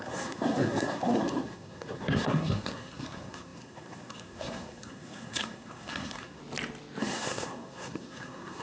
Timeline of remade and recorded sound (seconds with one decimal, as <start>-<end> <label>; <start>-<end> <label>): 0.0-6.4 remade; 6.4-7.0 recorded; 7.0-8.6 remade